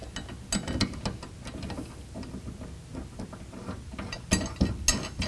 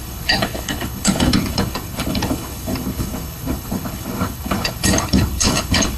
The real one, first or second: first